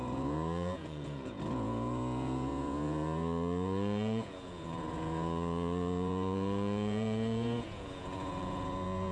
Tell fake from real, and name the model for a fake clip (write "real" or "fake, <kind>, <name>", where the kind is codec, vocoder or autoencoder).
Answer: fake, vocoder, Vocos